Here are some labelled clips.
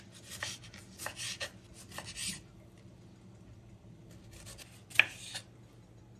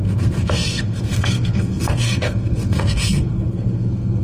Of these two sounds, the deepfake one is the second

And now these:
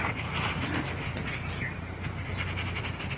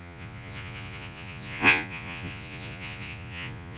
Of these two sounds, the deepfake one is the second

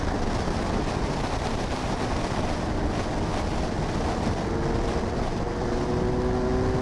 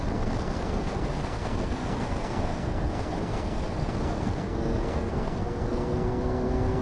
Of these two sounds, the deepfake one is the second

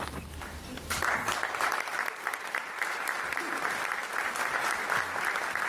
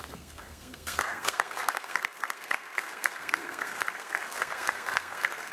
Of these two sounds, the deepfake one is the second